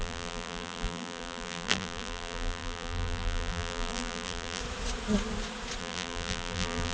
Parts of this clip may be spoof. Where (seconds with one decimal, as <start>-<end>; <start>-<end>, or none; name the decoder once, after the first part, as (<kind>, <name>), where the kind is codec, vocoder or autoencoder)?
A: 0.0-4.6 (vocoder, BigVGAN v2); 5.8-6.9